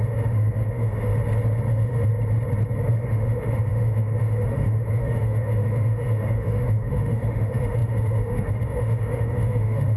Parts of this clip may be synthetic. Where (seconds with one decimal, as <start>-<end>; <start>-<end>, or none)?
0.0-1.1; 1.7-2.1; 2.9-10.0